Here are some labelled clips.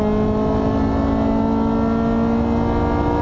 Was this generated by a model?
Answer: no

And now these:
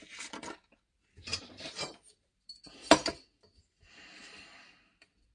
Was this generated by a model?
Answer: no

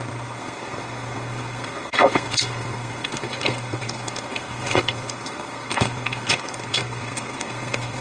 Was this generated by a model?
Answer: yes